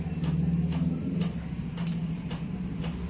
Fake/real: real